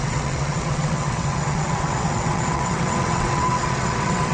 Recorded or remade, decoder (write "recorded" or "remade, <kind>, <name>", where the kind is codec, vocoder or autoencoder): remade, vocoder, WaveNeXt